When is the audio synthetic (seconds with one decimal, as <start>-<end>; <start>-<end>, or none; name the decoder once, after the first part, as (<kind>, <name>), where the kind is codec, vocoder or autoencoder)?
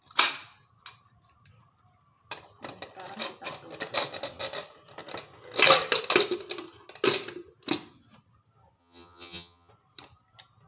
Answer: 8.8-9.7 (vocoder, HiFi-GAN)